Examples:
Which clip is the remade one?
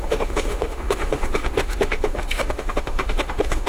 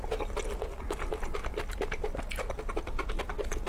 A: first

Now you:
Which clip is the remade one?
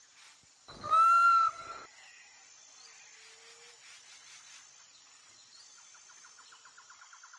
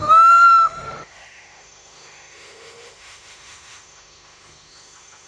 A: second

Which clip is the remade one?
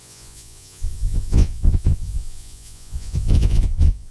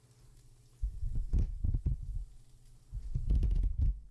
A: first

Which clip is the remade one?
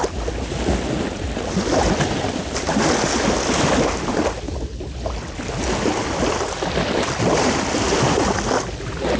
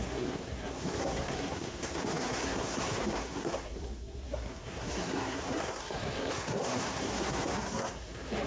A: second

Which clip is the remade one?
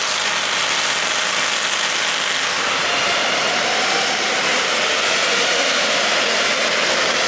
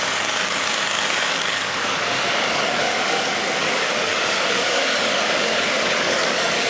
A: second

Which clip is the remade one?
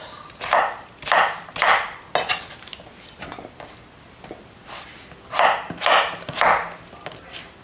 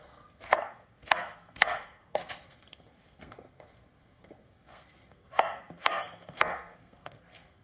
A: second